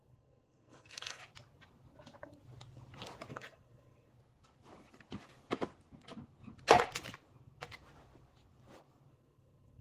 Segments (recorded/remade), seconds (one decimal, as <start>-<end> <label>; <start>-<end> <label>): 0.0-1.2 remade; 1.2-3.3 recorded; 3.3-4.1 remade; 4.1-9.1 recorded; 9.1-9.8 remade